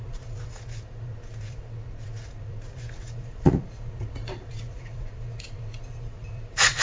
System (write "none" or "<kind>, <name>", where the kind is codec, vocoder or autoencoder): vocoder, Vocos